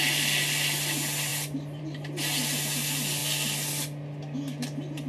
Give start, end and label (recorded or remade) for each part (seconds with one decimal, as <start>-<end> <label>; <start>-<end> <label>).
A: 0.0-5.1 recorded